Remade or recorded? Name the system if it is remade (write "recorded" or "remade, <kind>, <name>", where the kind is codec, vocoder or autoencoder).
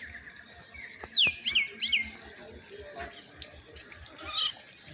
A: recorded